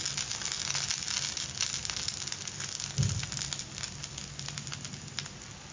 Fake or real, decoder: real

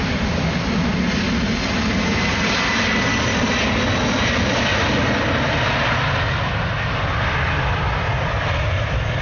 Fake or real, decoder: real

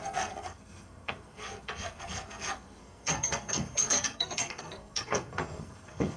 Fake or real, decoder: fake, codec, SNAC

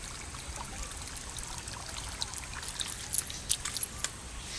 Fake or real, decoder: real